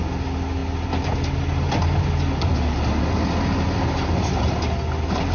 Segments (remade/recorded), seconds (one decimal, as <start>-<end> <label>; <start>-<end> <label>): 0.0-5.3 recorded